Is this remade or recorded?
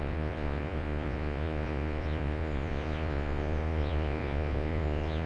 remade